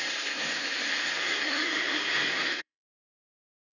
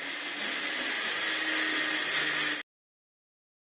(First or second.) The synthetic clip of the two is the first